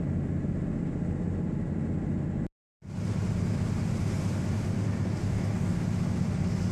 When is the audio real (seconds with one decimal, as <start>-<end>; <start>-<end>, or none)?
0.0-5.2; 5.8-6.7